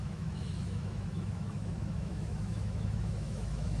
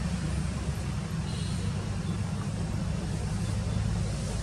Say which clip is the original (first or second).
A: second